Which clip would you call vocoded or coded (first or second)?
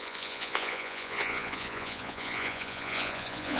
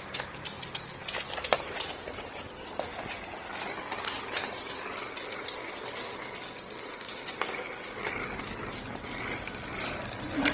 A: first